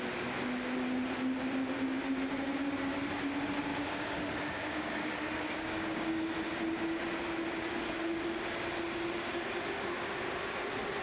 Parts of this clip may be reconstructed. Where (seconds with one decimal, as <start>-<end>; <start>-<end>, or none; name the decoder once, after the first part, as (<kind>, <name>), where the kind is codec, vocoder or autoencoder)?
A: 3.7-6.2 (codec, DAC)